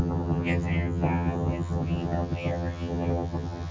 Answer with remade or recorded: remade